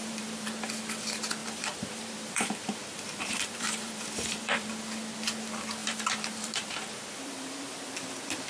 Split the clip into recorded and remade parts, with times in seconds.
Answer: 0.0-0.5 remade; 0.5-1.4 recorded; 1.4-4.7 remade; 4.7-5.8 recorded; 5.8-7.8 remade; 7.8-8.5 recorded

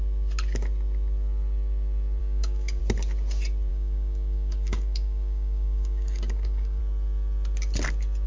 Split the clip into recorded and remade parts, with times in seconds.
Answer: 0.0-2.2 recorded; 2.2-2.8 remade; 2.8-3.7 recorded; 3.7-6.8 remade; 6.8-8.3 recorded

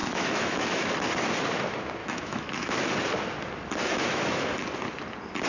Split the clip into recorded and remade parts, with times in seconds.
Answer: 0.0-0.9 remade; 0.9-2.0 recorded; 2.0-2.8 remade; 2.8-3.8 recorded; 3.8-4.5 remade; 4.5-5.5 recorded